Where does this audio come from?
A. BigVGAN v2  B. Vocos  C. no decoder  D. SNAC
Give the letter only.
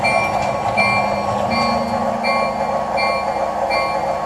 C